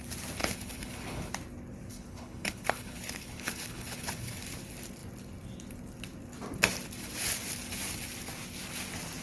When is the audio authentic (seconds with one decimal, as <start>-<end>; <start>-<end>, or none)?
0.0-0.4; 1.3-1.9; 4.4-9.2